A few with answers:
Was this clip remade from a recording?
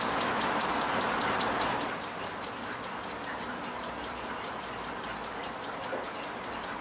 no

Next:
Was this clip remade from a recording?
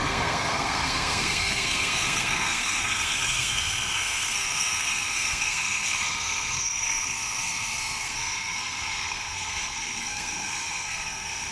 yes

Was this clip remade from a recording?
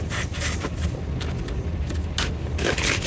no